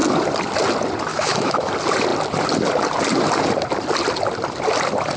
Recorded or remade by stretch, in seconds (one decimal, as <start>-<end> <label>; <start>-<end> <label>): 0.0-1.1 recorded; 1.1-1.7 remade; 1.7-5.2 recorded